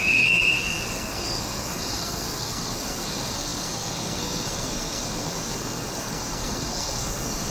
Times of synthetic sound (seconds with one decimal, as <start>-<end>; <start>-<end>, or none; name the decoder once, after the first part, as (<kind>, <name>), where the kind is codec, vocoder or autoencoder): 0.0-7.5 (codec, SNAC)